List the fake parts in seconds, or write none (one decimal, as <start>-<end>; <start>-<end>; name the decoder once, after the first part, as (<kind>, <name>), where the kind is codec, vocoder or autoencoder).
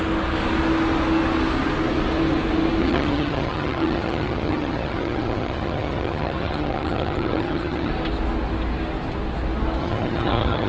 2.8-7.9 (vocoder, HiFi-GAN); 9.8-10.7